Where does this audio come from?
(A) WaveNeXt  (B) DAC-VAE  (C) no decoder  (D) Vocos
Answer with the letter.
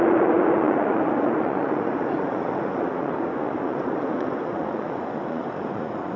D